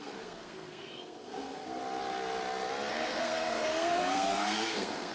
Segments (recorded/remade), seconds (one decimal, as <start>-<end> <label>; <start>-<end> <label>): 0.0-1.8 remade; 1.8-2.9 recorded; 2.9-5.1 remade